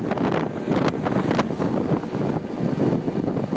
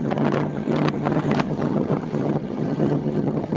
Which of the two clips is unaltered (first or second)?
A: first